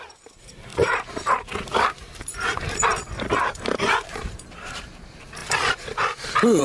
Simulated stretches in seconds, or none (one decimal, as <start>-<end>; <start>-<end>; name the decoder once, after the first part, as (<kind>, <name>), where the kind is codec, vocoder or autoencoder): 0.0-2.9 (vocoder, BigVGAN v2); 3.4-6.6